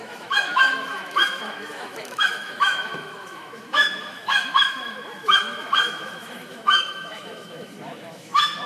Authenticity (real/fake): fake